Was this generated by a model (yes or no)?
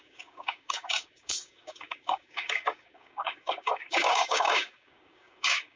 yes